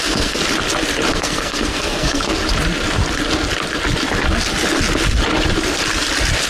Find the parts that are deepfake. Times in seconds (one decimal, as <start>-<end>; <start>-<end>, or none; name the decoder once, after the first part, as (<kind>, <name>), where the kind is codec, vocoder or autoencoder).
0.0-0.4 (codec, SNAC); 1.1-2.4